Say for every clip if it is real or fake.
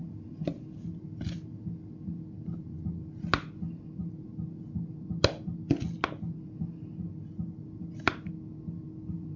real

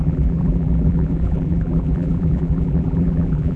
fake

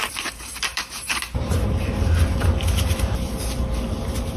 fake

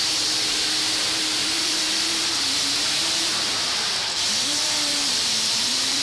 fake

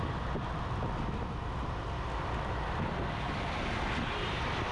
real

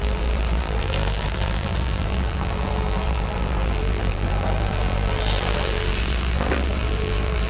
fake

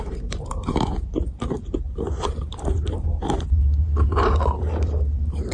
fake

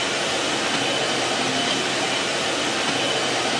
real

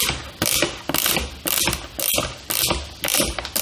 real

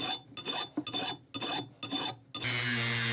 real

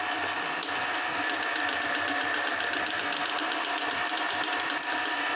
fake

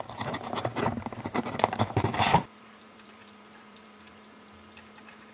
fake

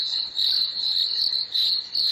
fake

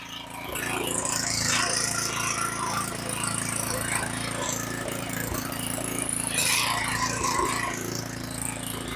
fake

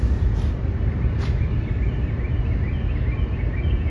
real